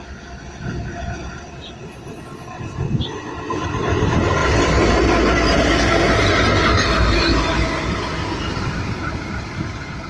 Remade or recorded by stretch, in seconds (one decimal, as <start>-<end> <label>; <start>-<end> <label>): 0.0-10.1 recorded